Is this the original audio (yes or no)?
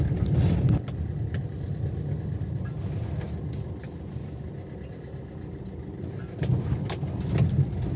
yes